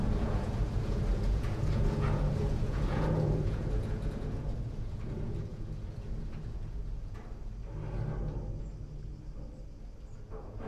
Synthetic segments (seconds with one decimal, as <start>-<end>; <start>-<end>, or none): 0.0-7.2; 10.1-10.7